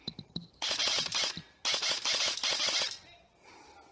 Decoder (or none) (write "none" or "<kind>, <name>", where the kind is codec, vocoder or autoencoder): none